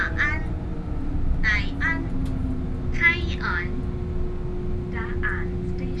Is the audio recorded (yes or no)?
yes